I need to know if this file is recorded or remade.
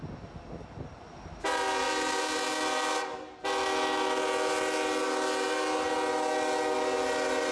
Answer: recorded